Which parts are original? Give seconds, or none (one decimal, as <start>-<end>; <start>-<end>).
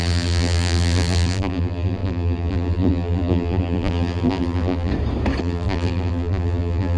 4.9-5.4